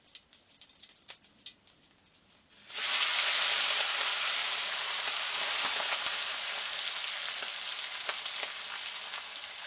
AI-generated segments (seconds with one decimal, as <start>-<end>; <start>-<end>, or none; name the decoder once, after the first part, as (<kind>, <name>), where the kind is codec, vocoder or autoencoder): 4.4-5.2 (vocoder, BigVGAN v2)